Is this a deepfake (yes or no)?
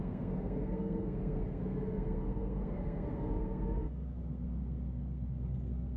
yes